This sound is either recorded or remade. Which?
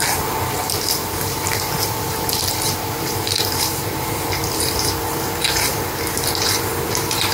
remade